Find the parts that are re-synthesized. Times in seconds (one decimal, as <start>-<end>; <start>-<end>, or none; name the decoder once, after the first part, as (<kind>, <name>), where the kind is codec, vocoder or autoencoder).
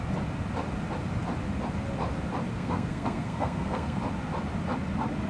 2.5-4.0 (codec, SNAC)